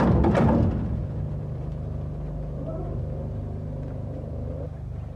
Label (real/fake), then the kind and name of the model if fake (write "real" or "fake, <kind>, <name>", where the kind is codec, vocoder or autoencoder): real